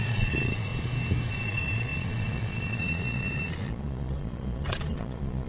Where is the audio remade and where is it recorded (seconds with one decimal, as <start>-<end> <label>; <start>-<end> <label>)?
0.0-0.7 remade; 0.7-1.3 recorded; 1.3-5.5 remade